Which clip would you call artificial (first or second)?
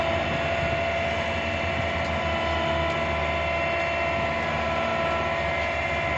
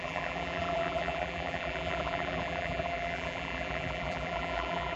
second